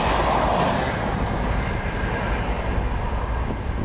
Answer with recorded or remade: recorded